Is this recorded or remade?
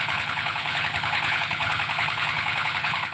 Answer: remade